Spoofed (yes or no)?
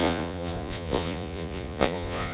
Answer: yes